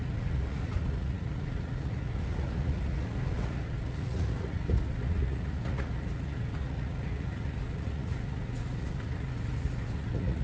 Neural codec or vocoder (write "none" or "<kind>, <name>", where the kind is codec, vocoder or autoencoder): vocoder, Vocos